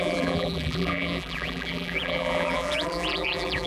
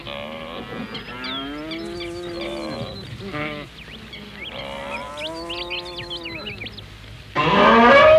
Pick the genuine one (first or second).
second